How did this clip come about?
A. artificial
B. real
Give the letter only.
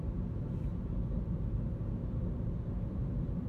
A